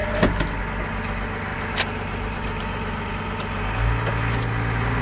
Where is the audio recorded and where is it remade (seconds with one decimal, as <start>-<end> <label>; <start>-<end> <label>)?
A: 0.0-1.5 recorded; 1.5-3.1 remade; 3.1-5.0 recorded